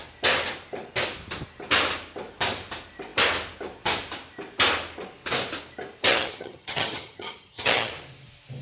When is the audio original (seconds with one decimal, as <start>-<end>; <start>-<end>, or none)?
0.0-6.1; 7.9-8.6